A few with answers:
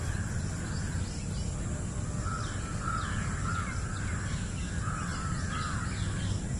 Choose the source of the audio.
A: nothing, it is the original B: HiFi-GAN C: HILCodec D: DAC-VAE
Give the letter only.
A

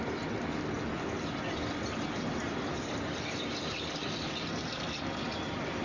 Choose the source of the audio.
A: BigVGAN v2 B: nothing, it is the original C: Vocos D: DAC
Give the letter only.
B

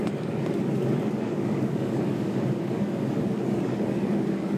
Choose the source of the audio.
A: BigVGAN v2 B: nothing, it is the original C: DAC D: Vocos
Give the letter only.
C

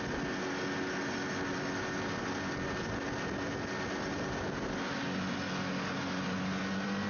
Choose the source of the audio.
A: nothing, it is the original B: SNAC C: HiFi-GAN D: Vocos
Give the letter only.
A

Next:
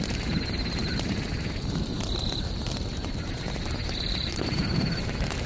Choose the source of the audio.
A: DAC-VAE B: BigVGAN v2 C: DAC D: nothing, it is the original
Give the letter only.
B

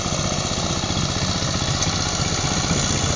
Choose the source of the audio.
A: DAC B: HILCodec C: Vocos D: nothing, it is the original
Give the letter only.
D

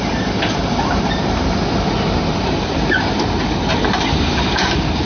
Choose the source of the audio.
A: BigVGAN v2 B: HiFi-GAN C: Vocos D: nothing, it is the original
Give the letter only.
A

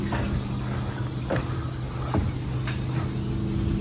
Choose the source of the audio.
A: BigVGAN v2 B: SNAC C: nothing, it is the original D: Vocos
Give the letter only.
C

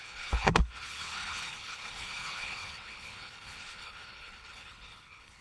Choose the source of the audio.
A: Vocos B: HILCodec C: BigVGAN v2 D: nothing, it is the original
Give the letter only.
B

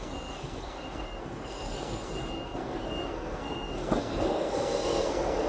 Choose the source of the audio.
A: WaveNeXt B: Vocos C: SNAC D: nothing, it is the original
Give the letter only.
C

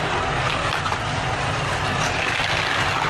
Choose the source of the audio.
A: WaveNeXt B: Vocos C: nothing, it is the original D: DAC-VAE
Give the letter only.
C